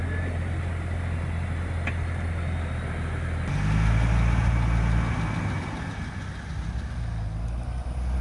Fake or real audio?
real